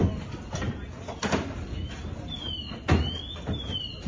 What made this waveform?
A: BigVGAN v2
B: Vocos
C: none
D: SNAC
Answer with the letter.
C